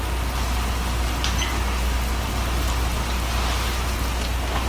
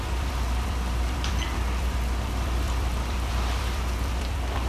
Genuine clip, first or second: first